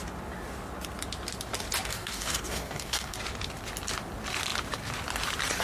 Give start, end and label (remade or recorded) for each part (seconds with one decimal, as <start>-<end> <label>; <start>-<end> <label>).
0.0-1.9 recorded; 1.9-3.2 remade; 3.2-5.6 recorded